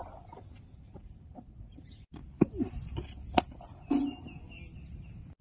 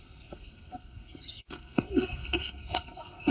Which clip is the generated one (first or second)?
second